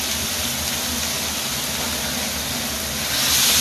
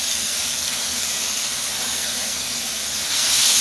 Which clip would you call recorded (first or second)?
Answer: first